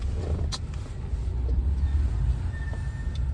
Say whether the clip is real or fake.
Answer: real